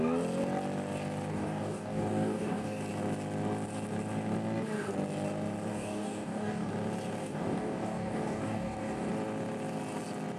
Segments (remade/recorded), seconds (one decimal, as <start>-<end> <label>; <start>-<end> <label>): 0.0-1.3 recorded; 1.3-2.8 remade; 2.8-5.7 recorded; 5.7-6.7 remade; 6.7-7.2 recorded; 7.2-9.1 remade; 9.1-10.4 recorded